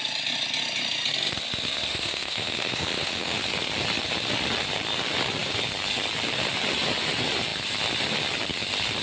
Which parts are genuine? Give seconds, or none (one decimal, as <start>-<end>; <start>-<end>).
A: 0.0-1.9; 3.4-9.0